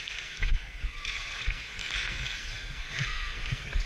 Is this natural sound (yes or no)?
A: no